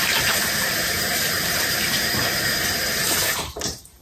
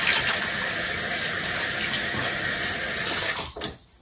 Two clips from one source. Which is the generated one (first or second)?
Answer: first